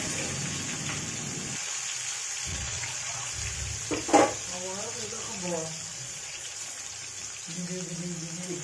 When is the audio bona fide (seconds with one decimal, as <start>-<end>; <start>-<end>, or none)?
0.0-2.5; 3.3-5.9; 6.8-8.6